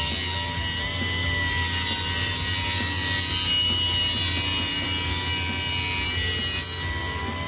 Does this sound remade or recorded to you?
recorded